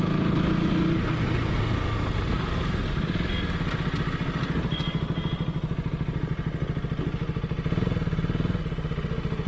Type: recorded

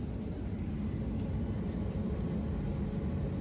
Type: recorded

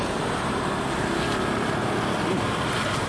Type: recorded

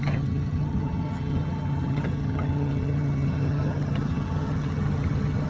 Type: remade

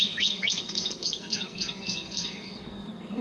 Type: remade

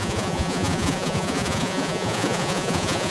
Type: remade